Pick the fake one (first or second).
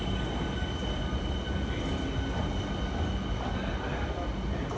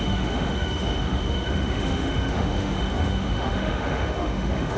second